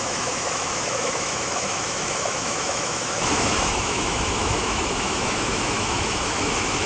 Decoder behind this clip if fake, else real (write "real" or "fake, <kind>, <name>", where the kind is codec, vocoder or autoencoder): fake, autoencoder, DAC-VAE